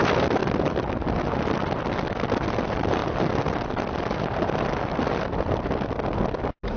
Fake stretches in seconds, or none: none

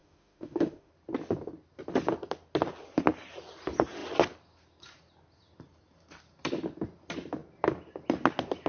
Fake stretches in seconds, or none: 0.0-0.9 (autoencoder, DAC-VAE)

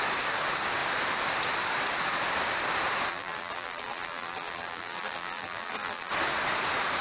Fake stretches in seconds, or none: 3.1-6.1 (vocoder, BigVGAN v2)

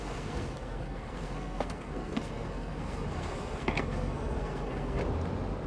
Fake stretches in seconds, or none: 0.0-5.0 (codec, SNAC)

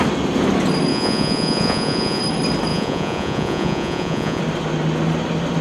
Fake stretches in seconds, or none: 0.9-2.2 (vocoder, Vocos); 2.7-4.4

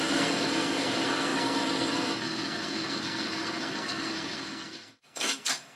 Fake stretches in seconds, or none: 0.0-5.8 (codec, SNAC)

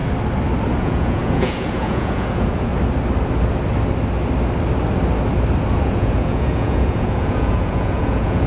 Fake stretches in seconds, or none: 0.7-2.7 (vocoder, Vocos); 5.8-8.5